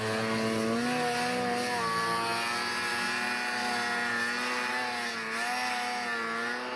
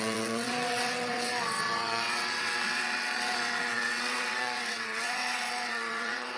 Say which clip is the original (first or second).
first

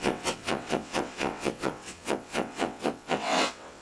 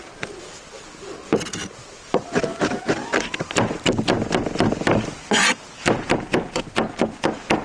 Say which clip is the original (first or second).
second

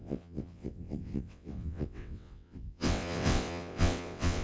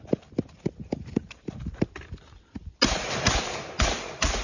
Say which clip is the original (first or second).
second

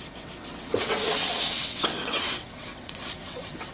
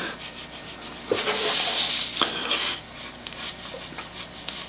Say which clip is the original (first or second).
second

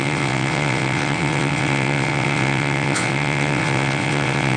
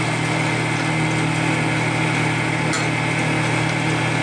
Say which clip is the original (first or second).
second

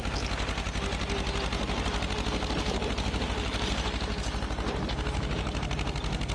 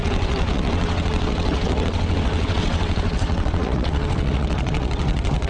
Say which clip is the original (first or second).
first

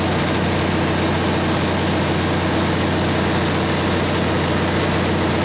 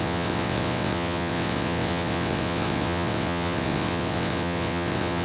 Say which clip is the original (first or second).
first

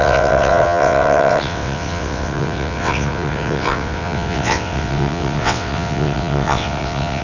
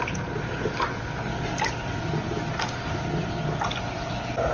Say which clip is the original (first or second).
second